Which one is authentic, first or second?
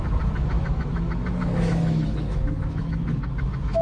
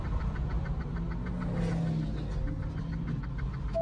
second